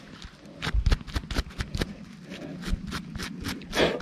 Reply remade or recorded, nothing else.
recorded